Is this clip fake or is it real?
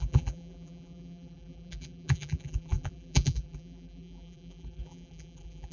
fake